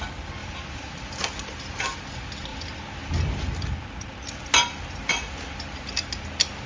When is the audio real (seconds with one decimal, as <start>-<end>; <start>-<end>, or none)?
0.0-0.4; 1.1-6.7